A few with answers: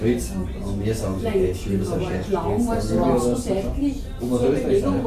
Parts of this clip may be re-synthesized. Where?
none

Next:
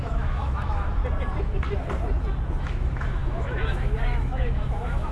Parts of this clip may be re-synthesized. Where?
0.0-1.0; 2.6-5.1

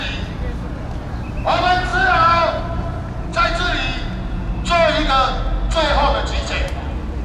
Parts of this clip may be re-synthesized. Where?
1.9-2.6; 3.3-4.5

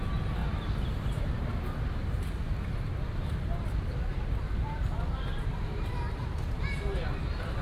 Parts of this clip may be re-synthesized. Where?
0.4-1.5; 2.4-6.0

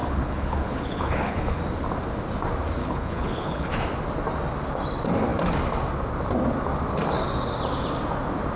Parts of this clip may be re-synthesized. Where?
0.0-1.6; 2.8-3.7

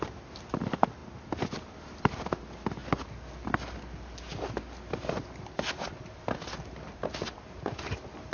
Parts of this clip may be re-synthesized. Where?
none

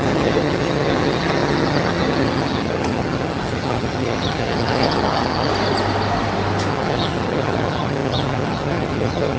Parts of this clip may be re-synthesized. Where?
0.0-5.5; 6.7-9.4